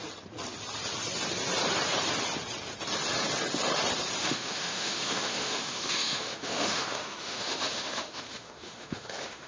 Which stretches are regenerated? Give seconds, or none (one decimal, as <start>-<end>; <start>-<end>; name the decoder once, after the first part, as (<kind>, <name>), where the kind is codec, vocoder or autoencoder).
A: 4.2-9.5 (autoencoder, DAC-VAE)

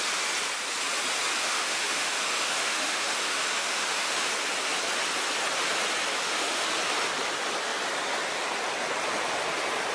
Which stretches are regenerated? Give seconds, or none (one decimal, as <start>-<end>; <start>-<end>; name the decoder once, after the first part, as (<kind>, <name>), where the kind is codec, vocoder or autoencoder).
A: 1.4-4.3 (autoencoder, DAC-VAE); 6.2-6.7

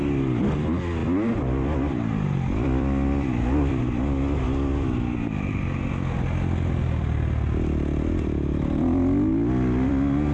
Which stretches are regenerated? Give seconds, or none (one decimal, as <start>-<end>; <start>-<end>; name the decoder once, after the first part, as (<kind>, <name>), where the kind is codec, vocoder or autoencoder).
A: 1.0-3.8 (vocoder, BigVGAN v2)

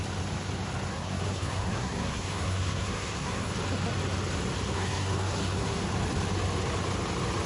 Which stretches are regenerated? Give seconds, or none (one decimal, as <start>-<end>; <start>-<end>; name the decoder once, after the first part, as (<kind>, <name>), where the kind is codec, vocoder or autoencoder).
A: 0.9-3.5 (codec, SNAC); 4.7-5.8

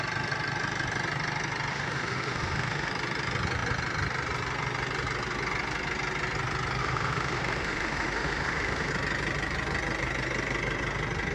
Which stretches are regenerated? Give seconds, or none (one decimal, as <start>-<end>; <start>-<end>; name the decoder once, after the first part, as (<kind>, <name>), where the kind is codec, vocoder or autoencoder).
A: 1.7-2.9 (autoencoder, DAC-VAE); 6.8-8.9

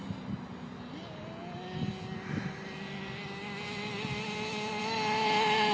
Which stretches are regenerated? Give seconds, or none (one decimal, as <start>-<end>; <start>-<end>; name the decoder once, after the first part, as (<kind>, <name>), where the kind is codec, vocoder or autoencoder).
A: none